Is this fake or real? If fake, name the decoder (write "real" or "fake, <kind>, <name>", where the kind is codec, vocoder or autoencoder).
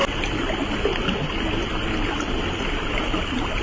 real